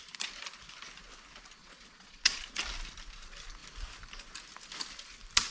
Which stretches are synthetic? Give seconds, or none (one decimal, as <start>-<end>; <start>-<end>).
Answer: 1.6-2.4